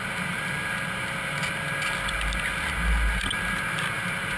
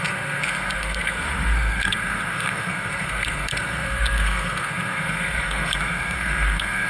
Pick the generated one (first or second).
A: second